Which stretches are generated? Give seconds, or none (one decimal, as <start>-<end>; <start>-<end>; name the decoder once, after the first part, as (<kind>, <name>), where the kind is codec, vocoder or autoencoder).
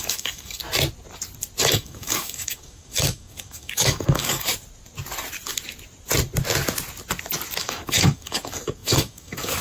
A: 0.0-0.6 (codec, DAC); 1.7-4.5; 7.6-9.6